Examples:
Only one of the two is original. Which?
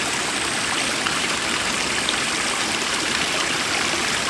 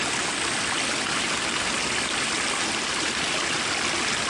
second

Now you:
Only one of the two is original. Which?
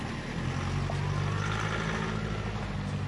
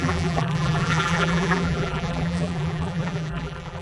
first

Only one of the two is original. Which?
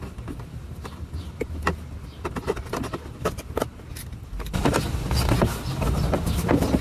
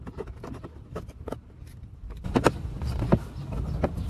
first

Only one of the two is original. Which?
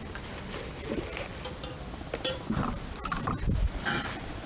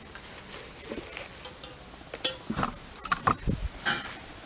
second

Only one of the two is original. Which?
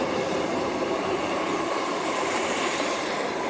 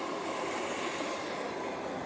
second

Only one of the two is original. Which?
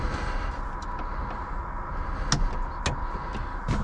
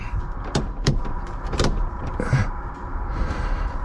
first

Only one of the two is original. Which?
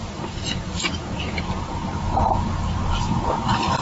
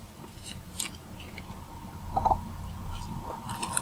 second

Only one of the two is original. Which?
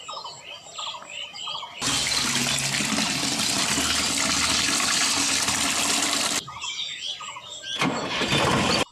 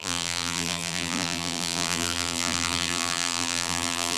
first